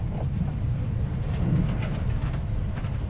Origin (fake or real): real